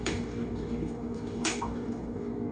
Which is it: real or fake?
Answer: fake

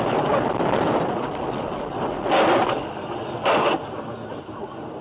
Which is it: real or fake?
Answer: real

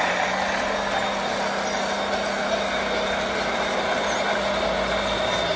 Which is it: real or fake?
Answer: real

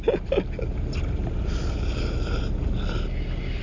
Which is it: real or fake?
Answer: real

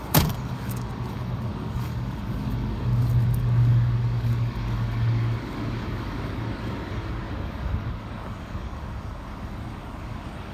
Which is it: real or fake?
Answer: fake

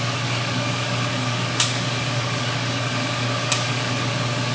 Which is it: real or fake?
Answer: fake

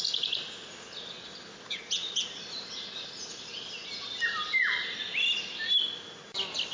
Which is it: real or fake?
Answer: real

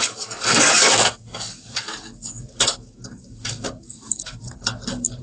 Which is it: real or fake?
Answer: fake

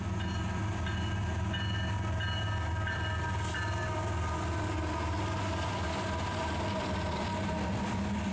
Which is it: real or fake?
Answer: real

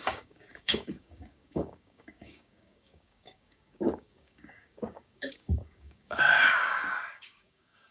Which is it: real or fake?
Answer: fake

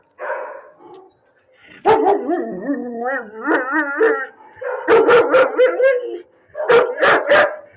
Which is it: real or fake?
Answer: real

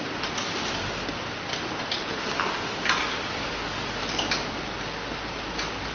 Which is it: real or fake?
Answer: real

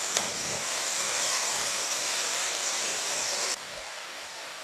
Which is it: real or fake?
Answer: fake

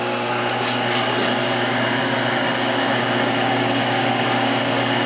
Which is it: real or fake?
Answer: fake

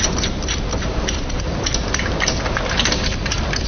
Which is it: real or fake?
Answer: real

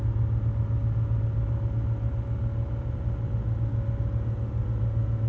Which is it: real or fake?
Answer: real